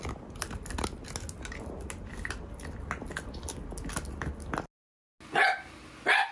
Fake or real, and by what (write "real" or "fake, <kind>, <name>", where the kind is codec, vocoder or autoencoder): real